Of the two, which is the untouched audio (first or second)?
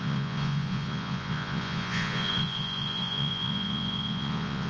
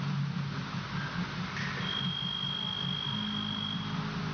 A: second